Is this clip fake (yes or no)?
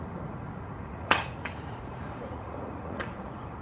yes